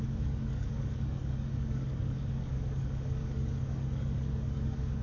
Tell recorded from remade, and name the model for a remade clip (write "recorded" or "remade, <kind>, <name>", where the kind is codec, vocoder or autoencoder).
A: remade, codec, DAC